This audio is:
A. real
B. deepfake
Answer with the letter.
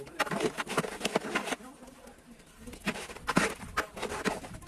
A